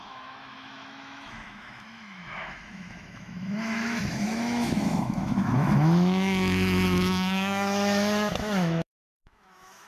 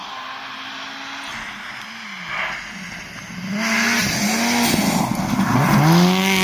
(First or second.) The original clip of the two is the second